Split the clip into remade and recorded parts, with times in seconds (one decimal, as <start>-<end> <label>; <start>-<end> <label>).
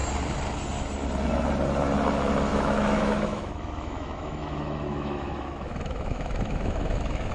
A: 0.0-2.5 recorded; 2.5-7.3 remade